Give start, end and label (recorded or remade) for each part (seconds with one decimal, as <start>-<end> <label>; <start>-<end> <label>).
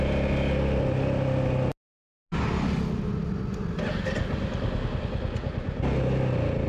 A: 0.0-6.7 recorded